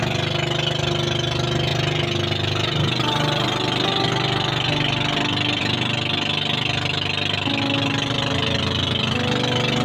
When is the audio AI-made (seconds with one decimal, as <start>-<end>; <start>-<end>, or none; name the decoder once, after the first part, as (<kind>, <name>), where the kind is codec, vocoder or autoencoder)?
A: none